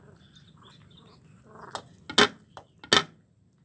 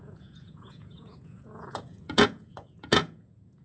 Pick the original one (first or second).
first